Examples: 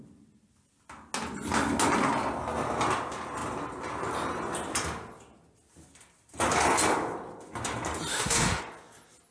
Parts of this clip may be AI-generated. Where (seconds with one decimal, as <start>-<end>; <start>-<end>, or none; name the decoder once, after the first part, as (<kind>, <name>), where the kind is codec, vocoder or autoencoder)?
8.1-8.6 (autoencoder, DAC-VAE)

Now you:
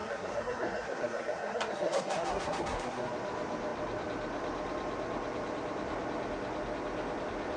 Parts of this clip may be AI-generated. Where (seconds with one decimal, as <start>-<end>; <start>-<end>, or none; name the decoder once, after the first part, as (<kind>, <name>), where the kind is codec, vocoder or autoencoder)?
0.0-3.1 (codec, SNAC)

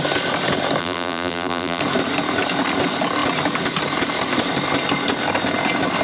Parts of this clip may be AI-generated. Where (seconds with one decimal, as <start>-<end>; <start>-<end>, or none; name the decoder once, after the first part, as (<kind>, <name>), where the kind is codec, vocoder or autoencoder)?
0.8-1.8 (vocoder, BigVGAN v2)

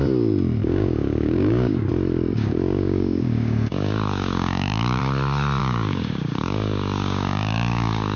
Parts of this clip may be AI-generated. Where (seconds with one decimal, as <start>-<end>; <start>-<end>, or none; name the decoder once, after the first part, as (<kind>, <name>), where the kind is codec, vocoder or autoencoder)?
0.6-1.9 (codec, DAC); 2.3-5.0; 5.6-8.2

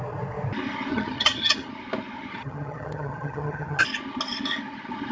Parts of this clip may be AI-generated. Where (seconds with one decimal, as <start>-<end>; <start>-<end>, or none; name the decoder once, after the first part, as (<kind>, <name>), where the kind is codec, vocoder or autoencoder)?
0.9-1.7 (vocoder, HiFi-GAN); 2.3-3.8

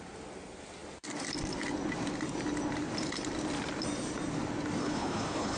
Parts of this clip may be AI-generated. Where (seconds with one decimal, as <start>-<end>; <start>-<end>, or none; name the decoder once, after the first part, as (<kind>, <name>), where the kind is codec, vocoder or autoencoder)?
4.8-5.6 (codec, HILCodec)

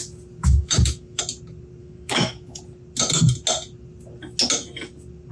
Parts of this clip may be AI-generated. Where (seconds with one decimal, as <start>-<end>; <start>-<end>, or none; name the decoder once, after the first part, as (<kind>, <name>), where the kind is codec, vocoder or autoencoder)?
0.4-1.2 (autoencoder, DAC-VAE); 1.8-2.6